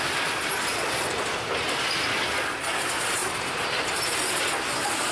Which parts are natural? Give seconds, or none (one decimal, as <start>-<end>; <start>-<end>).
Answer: 0.0-5.1